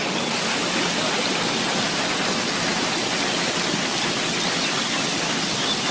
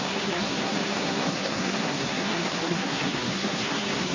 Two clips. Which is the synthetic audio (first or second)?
second